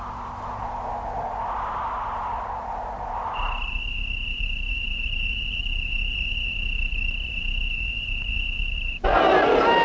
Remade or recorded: recorded